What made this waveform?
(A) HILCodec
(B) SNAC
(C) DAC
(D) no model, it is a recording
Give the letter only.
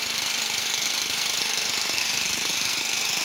B